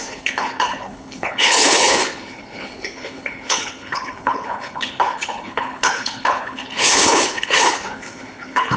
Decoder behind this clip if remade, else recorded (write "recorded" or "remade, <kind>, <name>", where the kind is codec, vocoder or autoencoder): remade, codec, HILCodec